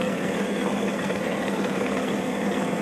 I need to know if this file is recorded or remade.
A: remade